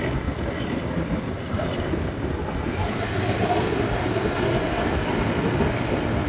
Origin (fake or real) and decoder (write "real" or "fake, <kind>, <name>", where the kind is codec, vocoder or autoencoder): fake, vocoder, BigVGAN v2